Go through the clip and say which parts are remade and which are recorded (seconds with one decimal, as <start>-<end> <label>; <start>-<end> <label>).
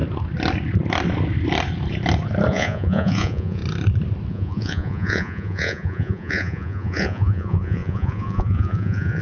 0.0-2.5 recorded; 2.5-3.6 remade; 3.6-4.3 recorded; 4.3-9.2 remade